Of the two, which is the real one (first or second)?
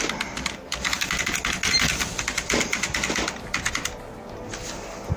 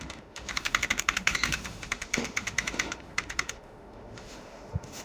first